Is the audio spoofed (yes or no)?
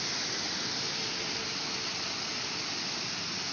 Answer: no